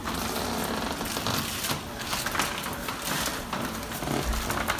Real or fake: real